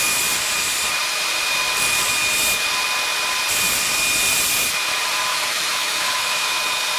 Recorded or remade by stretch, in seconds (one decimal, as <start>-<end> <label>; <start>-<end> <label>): 0.0-5.3 recorded; 5.3-6.6 remade; 6.6-7.0 recorded